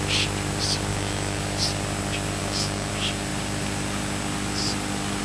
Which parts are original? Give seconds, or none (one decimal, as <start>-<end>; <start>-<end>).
0.0-0.9; 1.4-2.4; 2.9-5.2